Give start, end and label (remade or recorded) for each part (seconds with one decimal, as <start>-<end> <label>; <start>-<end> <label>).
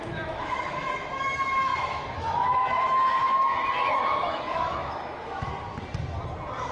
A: 0.0-5.5 remade; 5.5-6.7 recorded